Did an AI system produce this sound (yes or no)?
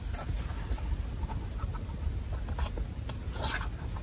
no